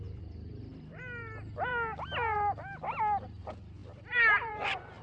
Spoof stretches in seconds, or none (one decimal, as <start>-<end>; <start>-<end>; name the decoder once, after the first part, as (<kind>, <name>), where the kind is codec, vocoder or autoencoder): 0.0-1.7 (vocoder, BigVGAN v2); 3.4-5.0